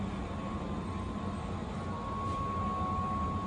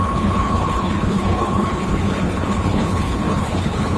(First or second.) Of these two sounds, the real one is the first